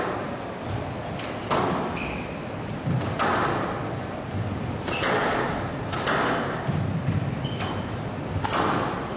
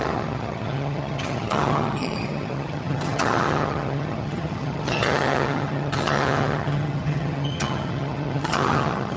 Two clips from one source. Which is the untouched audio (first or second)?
first